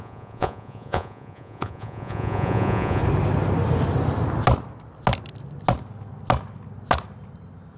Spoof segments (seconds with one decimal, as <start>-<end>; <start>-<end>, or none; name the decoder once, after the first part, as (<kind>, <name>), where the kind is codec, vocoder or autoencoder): 0.0-3.0 (vocoder, Vocos)